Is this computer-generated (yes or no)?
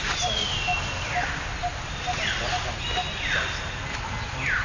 no